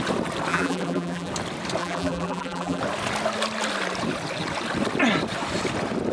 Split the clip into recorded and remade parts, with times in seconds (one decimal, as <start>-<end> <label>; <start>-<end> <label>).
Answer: 0.0-0.5 recorded; 0.5-1.3 remade; 1.3-1.8 recorded; 1.8-2.8 remade; 2.8-6.1 recorded